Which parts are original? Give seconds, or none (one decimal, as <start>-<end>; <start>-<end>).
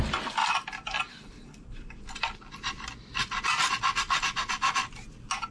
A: 0.0-0.4; 3.7-5.5